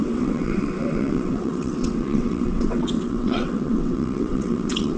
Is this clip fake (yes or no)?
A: yes